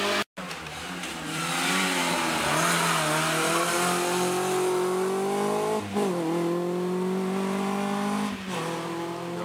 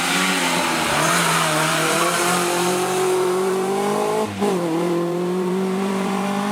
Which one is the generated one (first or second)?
second